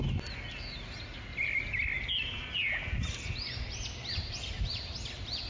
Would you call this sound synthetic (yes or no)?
no